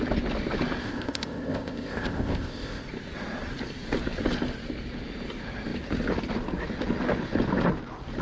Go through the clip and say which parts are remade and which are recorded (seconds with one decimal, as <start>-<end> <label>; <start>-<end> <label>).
0.0-0.8 recorded; 0.8-2.8 remade; 2.8-8.2 recorded